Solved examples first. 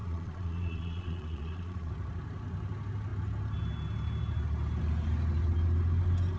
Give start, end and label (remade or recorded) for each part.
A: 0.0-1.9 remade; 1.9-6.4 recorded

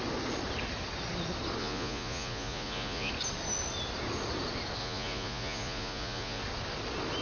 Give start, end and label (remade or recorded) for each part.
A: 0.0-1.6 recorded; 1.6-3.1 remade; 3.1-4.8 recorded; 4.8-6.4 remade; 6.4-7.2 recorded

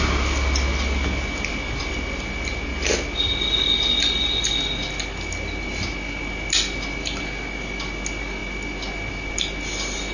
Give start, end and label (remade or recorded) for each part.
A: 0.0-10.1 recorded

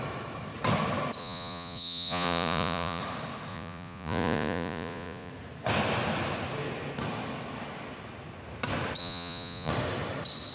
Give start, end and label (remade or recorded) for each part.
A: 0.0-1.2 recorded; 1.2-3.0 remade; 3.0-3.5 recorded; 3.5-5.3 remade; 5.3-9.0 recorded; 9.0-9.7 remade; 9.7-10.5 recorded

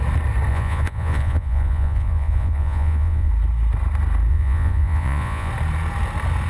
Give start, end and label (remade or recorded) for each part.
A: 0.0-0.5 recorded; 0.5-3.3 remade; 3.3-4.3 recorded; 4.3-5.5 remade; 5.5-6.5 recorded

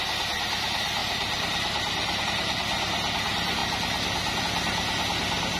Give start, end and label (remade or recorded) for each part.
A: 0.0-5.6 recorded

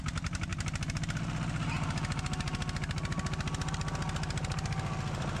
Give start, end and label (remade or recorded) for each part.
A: 0.0-5.4 recorded

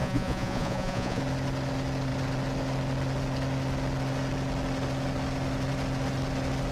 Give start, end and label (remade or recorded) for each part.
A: 0.0-1.2 remade; 1.2-6.7 recorded